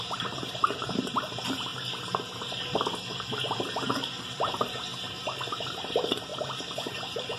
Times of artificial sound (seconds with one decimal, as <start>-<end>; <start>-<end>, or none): 0.0-1.7; 4.2-4.9; 5.5-7.4